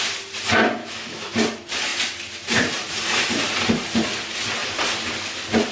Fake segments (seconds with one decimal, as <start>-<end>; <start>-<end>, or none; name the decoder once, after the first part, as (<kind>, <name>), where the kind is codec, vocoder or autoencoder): 0.8-1.3 (autoencoder, DAC-VAE)